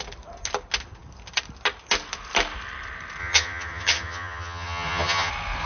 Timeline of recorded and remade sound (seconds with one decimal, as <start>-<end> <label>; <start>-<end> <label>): 0.0-3.2 recorded; 3.2-5.3 remade; 5.3-5.7 recorded